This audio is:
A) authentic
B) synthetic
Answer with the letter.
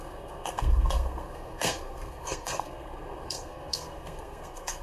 B